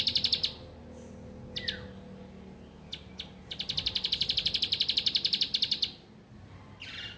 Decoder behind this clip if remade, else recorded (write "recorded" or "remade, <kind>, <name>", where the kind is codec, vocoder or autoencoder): recorded